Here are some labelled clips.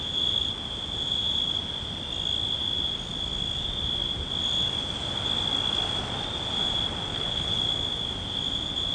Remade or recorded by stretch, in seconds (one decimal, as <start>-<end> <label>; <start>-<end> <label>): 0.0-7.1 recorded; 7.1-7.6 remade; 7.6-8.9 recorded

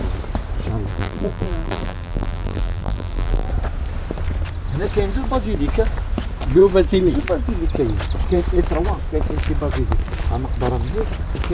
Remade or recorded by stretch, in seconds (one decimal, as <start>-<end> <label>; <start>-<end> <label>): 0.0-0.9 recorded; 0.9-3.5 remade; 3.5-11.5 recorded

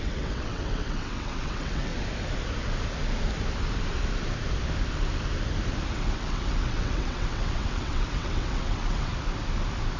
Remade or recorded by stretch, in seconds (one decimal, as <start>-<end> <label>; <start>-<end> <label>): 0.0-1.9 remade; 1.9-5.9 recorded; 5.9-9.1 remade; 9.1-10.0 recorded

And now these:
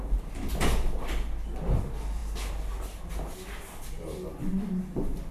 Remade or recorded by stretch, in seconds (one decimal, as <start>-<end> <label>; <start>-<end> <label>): 0.0-5.3 recorded

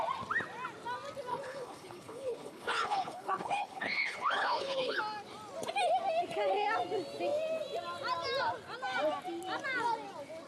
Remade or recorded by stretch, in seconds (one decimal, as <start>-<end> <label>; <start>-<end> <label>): 0.0-1.3 recorded; 1.3-5.0 remade; 5.0-10.5 recorded

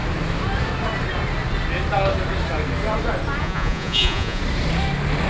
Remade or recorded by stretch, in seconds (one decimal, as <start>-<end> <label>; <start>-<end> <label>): 0.0-3.4 recorded; 3.4-4.4 remade; 4.4-5.3 recorded

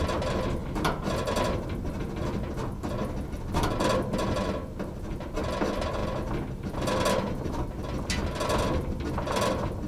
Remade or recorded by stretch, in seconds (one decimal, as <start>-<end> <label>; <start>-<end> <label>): 0.0-0.6 recorded; 0.6-2.0 remade; 2.0-9.9 recorded

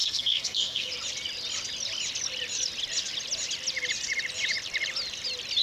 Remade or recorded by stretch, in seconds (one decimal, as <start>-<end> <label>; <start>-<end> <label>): 0.0-0.9 remade; 0.9-5.6 recorded